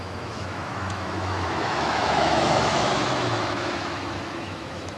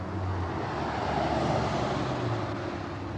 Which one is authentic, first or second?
second